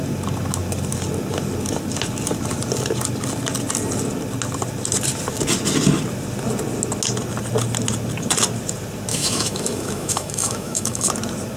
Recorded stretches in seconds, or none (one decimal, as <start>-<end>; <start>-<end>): 0.0-9.1; 11.1-11.6